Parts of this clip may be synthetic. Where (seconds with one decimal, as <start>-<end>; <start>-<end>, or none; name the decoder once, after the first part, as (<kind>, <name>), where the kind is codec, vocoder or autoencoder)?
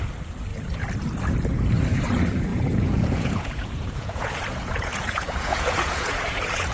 2.5-6.7 (vocoder, Vocos)